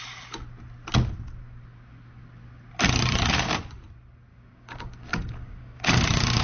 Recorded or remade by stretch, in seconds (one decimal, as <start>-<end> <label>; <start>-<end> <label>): 0.0-4.3 recorded; 4.3-6.4 remade